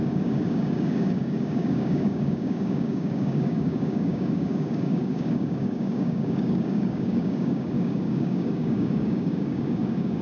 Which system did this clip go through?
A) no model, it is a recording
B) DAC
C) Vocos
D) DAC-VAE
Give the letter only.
B